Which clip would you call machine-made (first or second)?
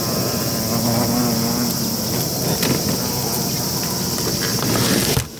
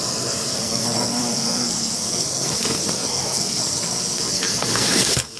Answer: second